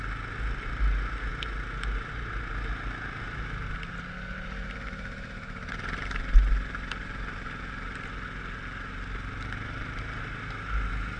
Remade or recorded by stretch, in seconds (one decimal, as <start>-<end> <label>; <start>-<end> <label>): 0.0-11.2 recorded